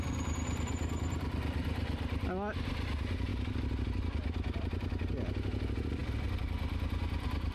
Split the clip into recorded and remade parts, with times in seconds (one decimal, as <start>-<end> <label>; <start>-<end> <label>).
0.0-7.5 recorded